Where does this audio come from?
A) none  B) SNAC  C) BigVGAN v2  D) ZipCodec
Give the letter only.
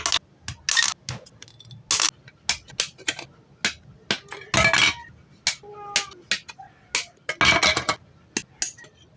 A